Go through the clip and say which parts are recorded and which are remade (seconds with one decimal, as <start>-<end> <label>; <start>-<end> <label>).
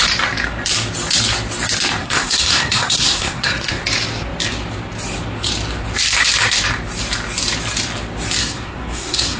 0.0-2.0 recorded; 2.0-3.8 remade; 3.8-8.4 recorded; 8.4-9.4 remade